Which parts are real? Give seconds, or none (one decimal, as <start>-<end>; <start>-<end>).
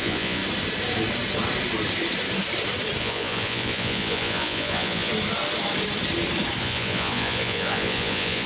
0.4-3.0; 5.1-6.6